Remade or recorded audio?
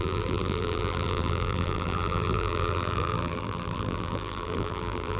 remade